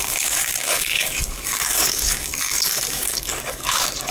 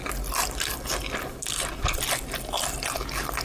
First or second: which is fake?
first